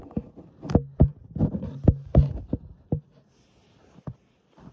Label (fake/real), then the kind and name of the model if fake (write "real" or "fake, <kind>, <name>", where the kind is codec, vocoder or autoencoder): real